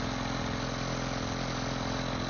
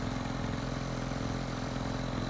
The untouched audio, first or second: first